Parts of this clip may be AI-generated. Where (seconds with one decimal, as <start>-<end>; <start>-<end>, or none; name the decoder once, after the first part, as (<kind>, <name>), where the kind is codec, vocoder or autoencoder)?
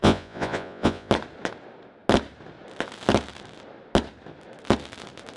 0.0-1.1 (vocoder, Vocos)